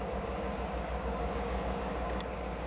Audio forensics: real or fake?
fake